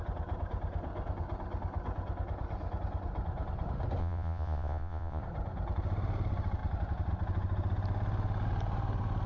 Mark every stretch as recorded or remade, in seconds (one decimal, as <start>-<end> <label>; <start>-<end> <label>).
0.0-4.0 recorded; 4.0-5.2 remade; 5.2-9.3 recorded